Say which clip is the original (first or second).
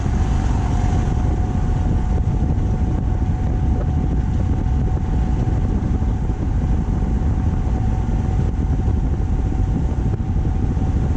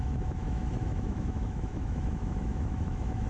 first